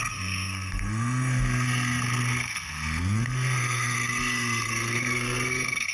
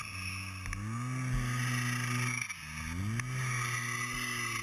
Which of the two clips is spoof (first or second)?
first